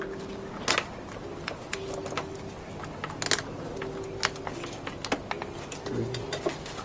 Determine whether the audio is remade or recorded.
recorded